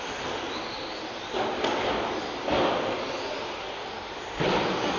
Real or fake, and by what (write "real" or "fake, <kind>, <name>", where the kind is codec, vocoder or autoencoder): real